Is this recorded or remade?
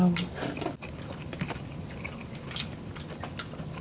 recorded